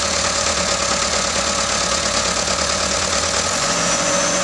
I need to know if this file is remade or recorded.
remade